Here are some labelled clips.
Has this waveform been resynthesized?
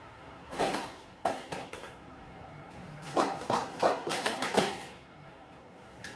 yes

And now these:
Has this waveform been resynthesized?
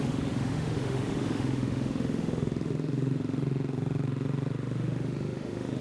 yes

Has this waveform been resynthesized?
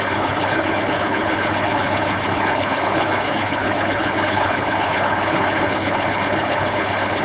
yes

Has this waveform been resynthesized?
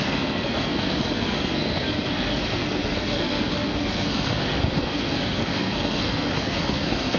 yes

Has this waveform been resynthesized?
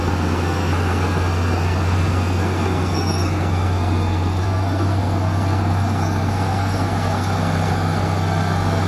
yes